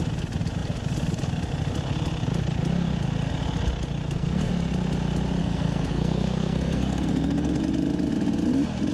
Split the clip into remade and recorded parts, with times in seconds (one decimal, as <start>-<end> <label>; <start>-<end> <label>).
0.0-4.0 recorded; 4.0-4.5 remade; 4.5-5.4 recorded; 5.4-7.6 remade; 7.6-8.9 recorded